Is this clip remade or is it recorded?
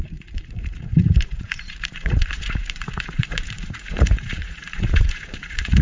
remade